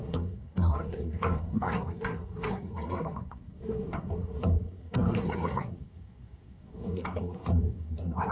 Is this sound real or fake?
fake